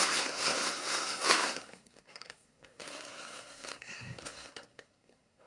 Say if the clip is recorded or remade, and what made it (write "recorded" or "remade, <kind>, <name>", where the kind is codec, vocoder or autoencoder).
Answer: remade, codec, SNAC